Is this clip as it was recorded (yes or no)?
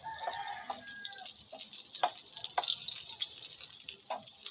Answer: yes